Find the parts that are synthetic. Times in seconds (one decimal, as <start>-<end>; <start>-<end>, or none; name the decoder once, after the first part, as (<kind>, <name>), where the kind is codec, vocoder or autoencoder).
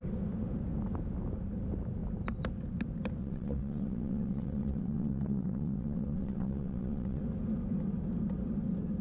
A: 3.2-7.2 (vocoder, WaveNeXt)